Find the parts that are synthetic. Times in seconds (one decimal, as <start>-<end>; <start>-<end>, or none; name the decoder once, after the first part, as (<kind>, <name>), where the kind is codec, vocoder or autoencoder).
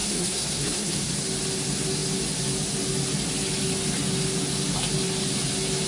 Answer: 0.0-1.1 (codec, SNAC)